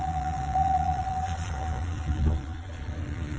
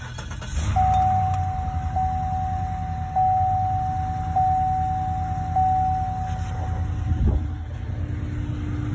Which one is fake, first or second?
first